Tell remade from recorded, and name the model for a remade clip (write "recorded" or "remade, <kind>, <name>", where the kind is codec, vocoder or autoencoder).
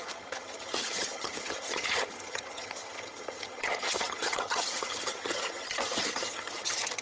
remade, vocoder, HiFi-GAN